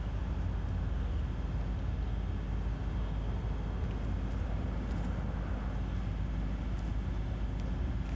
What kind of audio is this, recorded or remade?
recorded